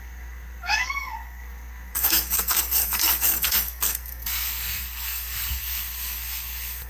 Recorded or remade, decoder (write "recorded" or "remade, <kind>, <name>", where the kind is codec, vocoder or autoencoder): remade, codec, SNAC